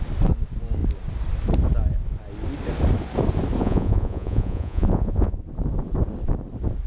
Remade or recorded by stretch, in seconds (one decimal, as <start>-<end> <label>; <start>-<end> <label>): 0.0-3.6 recorded; 3.6-5.4 remade; 5.4-6.9 recorded